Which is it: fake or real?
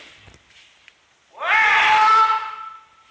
real